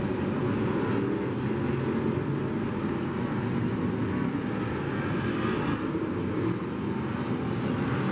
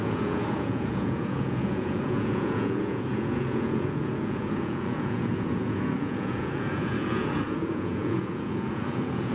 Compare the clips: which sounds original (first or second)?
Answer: first